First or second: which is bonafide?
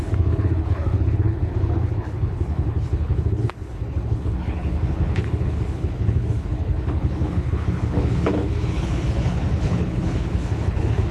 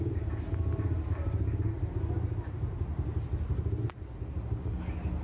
second